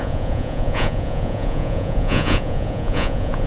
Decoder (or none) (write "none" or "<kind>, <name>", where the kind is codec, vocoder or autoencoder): vocoder, Vocos